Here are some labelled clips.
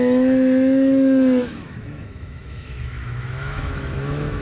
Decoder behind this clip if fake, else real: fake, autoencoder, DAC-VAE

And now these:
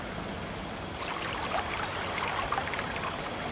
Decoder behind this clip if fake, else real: real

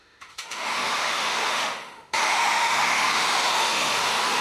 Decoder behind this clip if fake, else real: fake, autoencoder, DAC-VAE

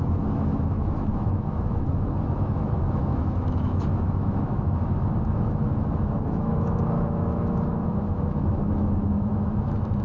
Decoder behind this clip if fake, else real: fake, autoencoder, DAC-VAE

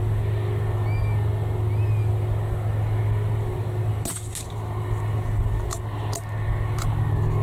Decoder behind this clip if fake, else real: real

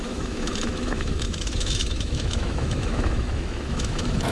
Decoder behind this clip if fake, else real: fake, autoencoder, DAC-VAE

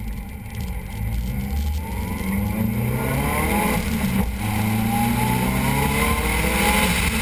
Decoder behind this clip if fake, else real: real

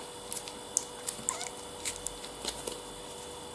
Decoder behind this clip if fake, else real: real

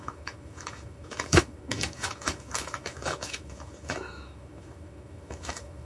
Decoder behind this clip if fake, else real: fake, autoencoder, DAC-VAE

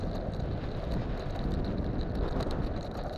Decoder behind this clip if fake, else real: real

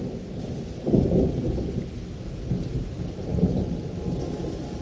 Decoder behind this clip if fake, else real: real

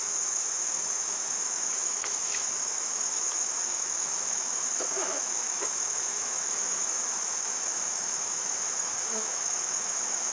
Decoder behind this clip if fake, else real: fake, autoencoder, DAC-VAE